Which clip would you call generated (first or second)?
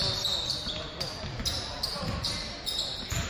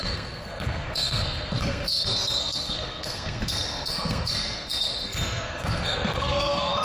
second